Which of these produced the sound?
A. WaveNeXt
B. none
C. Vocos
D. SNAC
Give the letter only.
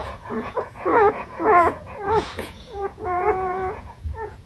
C